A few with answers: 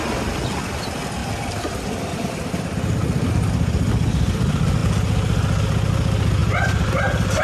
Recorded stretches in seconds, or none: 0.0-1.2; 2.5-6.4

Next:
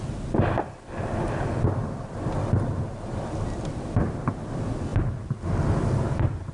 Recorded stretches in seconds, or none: 4.9-6.1

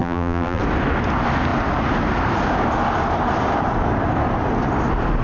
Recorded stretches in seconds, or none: 0.6-5.2

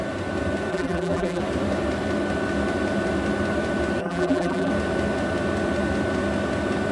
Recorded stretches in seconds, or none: 0.0-0.7; 1.4-4.0; 4.7-6.9

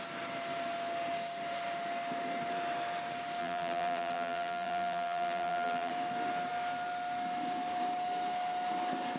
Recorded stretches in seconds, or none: 0.0-3.4; 5.9-9.2

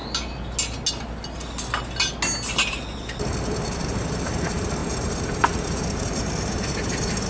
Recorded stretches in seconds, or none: 0.0-3.8

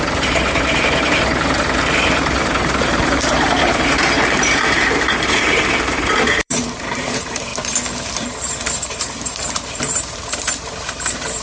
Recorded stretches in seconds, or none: 7.5-8.4

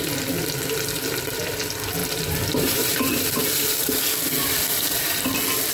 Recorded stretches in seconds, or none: 0.0-2.0; 4.0-4.4; 5.2-5.7